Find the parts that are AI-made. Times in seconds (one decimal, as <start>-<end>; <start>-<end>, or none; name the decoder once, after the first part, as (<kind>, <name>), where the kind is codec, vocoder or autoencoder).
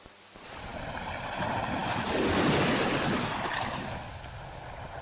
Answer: none